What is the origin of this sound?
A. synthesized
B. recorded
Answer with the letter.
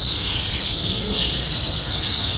A